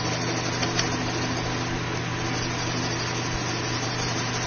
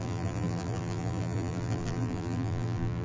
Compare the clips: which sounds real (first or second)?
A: first